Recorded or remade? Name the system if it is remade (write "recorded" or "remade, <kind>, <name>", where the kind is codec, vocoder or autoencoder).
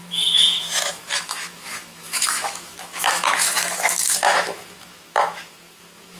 remade, autoencoder, DAC-VAE